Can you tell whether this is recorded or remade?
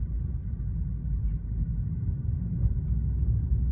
recorded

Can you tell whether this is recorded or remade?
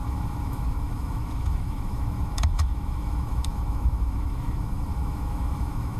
remade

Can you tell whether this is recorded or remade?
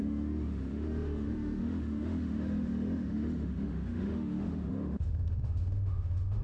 remade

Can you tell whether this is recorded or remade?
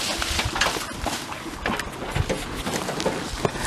recorded